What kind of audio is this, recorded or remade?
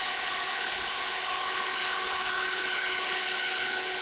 remade